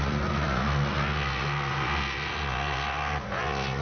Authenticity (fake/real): fake